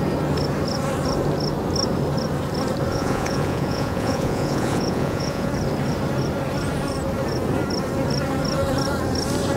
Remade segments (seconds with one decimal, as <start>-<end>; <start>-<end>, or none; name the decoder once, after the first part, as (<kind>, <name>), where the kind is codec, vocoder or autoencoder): 2.9-5.5 (vocoder, Vocos)